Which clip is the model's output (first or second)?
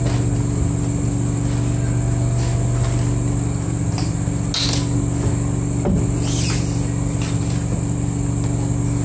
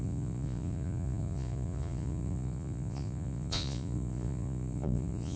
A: second